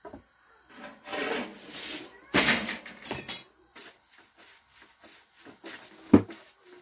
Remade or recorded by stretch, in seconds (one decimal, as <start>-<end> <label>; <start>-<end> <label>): 0.0-1.1 recorded; 1.1-3.6 remade; 3.6-6.8 recorded